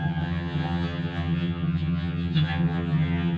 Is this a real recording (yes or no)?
no